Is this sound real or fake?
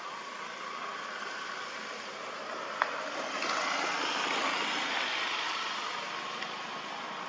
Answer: real